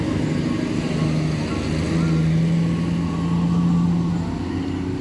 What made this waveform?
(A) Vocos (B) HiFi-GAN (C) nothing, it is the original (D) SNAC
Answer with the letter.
C